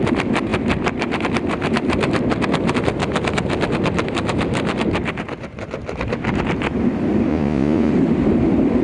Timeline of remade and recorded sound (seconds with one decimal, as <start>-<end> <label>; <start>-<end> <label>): 0.0-7.3 recorded; 7.3-7.9 remade; 7.9-8.8 recorded